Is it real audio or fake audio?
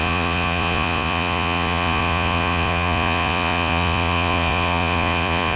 fake